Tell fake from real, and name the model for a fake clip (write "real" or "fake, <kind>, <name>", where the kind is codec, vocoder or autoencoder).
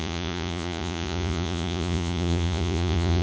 fake, vocoder, Vocos